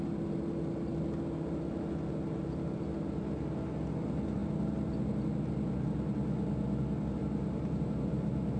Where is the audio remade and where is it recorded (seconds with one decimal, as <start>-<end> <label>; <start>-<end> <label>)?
0.0-7.2 recorded; 7.2-8.6 remade